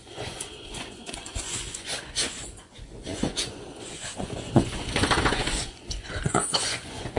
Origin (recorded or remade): remade